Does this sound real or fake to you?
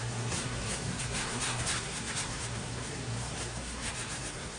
fake